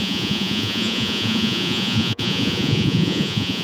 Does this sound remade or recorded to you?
remade